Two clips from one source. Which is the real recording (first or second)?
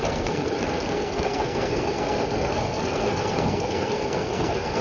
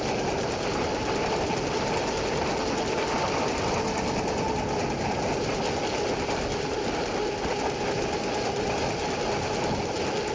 second